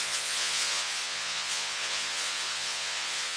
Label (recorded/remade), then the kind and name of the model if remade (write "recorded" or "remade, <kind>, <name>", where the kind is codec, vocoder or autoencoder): remade, vocoder, Vocos